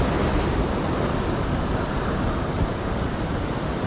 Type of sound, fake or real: real